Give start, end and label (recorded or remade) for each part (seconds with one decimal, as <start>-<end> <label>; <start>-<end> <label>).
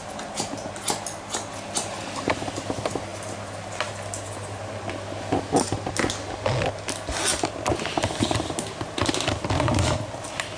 0.0-10.6 recorded